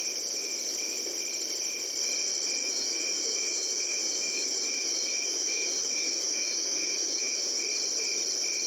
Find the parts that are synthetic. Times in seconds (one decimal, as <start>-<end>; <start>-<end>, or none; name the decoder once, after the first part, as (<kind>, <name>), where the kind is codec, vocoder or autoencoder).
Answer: 2.6-7.6 (autoencoder, DAC-VAE)